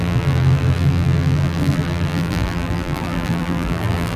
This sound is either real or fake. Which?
fake